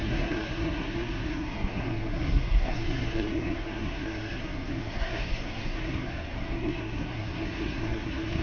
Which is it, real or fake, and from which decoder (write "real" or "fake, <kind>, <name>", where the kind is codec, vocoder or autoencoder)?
fake, codec, SNAC